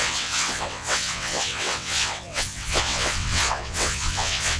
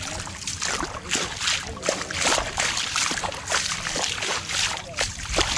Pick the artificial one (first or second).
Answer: first